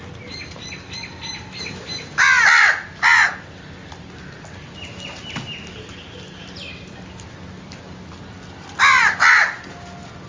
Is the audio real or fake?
real